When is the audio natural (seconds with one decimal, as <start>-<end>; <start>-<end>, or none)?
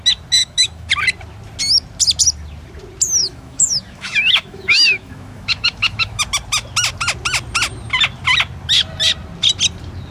0.0-0.4; 0.9-3.2; 6.2-10.1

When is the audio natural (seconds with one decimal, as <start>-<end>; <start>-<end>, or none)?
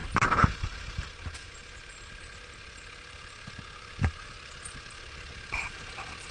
0.0-6.3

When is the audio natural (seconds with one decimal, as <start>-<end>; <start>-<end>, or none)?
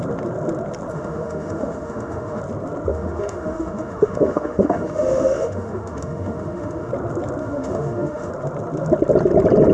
0.0-0.9; 2.4-2.9; 6.9-7.4; 8.3-9.7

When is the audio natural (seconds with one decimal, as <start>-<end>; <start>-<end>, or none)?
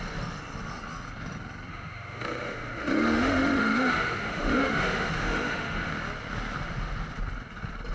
0.0-1.7; 5.9-7.9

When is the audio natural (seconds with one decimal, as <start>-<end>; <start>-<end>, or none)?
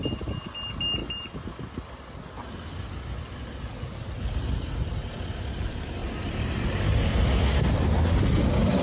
0.0-8.8